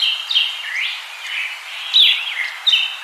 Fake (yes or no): no